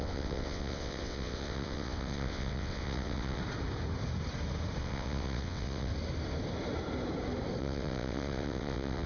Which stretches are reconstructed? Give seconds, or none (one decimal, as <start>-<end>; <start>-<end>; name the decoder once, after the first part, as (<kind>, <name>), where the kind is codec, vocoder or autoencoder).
0.0-3.4 (vocoder, WaveNeXt); 4.8-5.9; 7.6-9.1